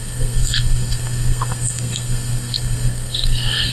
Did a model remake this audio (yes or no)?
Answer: yes